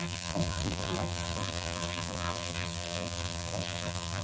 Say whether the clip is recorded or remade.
remade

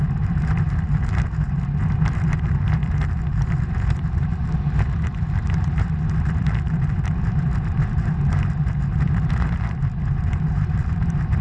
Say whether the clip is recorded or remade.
remade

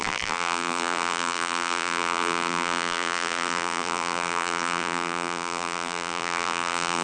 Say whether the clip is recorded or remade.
remade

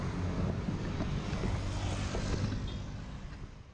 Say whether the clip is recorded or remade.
recorded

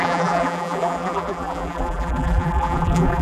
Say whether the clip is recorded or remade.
remade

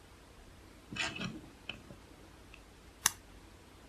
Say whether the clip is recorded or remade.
recorded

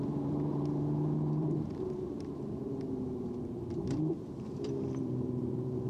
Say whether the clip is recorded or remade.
remade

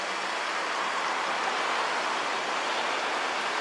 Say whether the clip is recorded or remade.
recorded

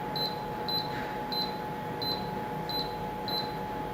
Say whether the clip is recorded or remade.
recorded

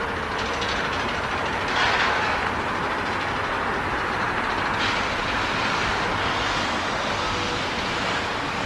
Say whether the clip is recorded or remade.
recorded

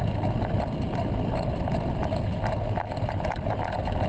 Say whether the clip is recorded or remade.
recorded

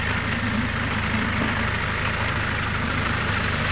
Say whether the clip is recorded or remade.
recorded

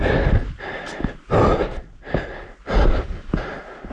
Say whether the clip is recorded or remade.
recorded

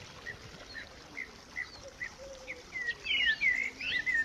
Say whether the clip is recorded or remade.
remade